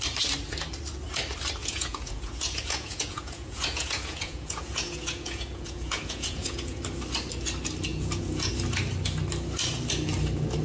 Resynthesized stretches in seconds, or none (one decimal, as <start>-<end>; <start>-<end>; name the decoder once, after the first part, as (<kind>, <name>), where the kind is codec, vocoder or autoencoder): 1.6-6.8 (vocoder, Vocos); 7.9-8.5